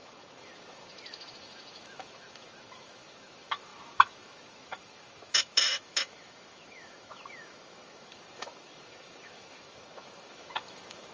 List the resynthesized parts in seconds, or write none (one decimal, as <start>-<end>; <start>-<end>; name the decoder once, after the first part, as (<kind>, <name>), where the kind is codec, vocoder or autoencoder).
0.0-11.1 (autoencoder, DAC-VAE)